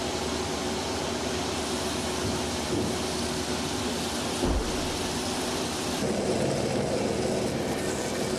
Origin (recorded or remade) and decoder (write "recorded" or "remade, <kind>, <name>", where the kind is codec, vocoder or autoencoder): recorded